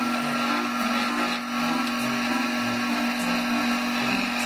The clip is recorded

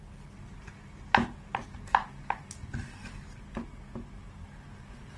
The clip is recorded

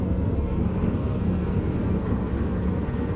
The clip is remade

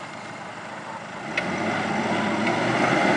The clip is recorded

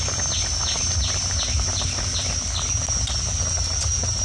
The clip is recorded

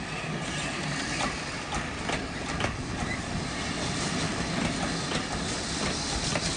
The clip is recorded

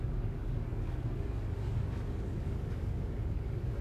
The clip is remade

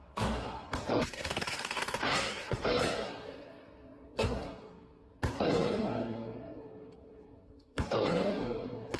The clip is remade